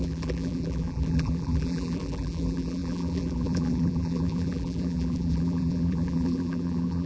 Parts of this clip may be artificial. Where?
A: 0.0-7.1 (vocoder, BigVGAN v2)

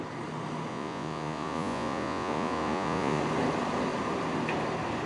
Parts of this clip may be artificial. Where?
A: 0.7-3.2 (vocoder, Vocos)